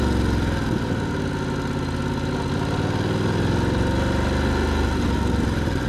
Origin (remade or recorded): recorded